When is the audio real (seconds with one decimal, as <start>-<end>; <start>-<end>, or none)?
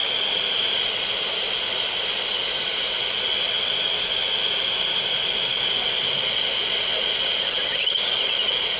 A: 0.0-8.8